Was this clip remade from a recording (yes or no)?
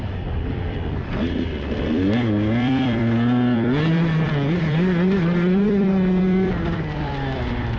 yes